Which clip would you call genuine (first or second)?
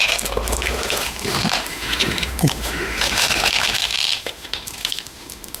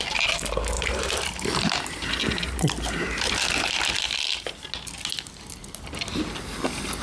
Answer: second